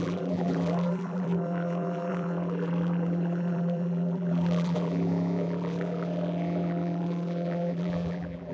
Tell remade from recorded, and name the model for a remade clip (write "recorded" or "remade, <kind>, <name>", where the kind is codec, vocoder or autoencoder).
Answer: remade, vocoder, BigVGAN v2